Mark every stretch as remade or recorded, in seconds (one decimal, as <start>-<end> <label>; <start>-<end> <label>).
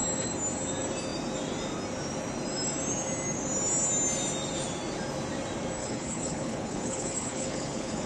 0.0-5.8 recorded; 5.8-8.1 remade